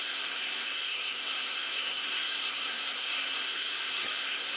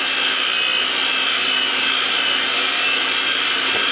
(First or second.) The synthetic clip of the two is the first